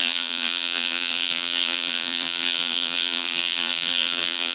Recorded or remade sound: remade